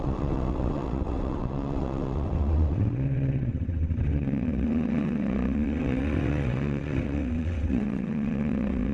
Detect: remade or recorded remade